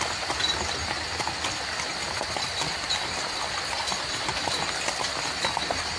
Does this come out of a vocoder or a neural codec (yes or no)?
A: no